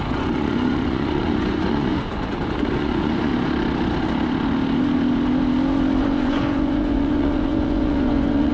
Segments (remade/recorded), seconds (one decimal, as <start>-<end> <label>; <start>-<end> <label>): 0.0-3.3 remade; 3.3-6.0 recorded; 6.0-8.5 remade